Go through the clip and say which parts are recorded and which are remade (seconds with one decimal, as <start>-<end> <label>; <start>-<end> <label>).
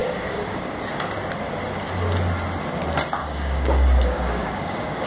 0.0-0.6 remade; 0.6-3.2 recorded; 3.2-5.1 remade